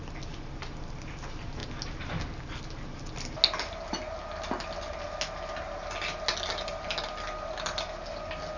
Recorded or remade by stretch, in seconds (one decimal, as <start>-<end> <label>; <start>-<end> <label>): 0.0-8.6 recorded